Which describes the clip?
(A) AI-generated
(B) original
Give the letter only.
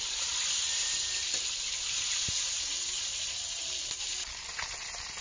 B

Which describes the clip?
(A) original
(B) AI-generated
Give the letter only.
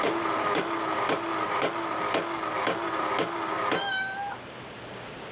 A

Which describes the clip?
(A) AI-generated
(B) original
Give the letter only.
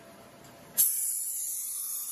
A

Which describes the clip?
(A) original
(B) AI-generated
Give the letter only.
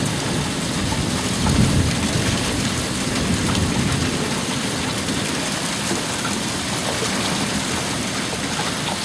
A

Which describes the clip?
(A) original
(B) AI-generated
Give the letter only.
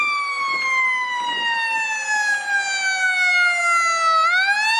A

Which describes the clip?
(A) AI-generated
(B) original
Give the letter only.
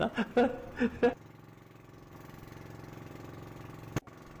B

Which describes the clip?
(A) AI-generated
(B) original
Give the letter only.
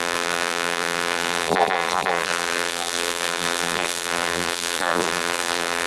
A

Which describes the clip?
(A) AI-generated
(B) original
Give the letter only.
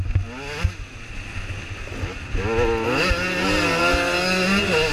B